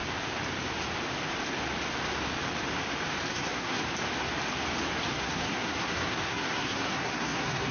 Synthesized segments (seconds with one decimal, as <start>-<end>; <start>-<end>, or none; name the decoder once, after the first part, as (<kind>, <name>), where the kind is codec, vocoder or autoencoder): 3.3-3.8 (codec, SNAC); 5.1-7.7